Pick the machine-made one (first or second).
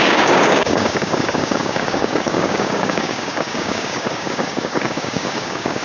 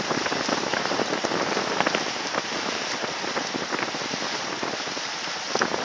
first